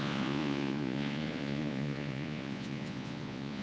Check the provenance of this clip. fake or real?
fake